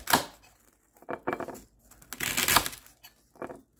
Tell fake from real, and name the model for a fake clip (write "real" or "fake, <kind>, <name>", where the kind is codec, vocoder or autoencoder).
real